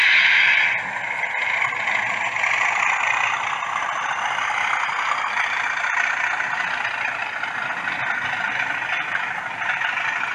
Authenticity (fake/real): real